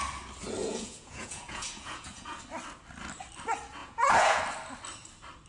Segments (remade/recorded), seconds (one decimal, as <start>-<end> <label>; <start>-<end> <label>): 0.0-0.6 recorded; 0.6-2.4 remade; 2.4-3.8 recorded; 3.8-4.4 remade; 4.4-5.5 recorded